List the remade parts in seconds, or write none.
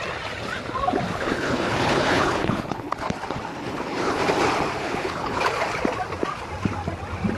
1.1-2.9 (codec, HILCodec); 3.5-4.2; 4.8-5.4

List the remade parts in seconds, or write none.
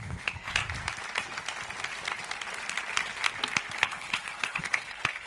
0.0-0.6 (codec, HILCodec); 3.8-5.3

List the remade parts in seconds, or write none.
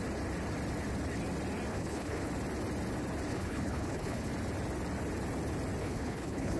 1.7-2.3 (codec, HILCodec); 3.3-4.3; 5.8-6.6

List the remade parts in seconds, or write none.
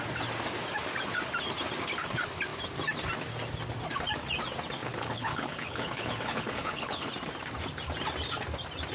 4.8-7.1 (codec, HILCodec)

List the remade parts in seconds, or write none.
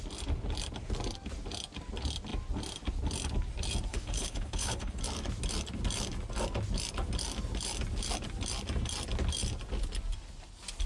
3.9-5.0 (codec, HILCodec)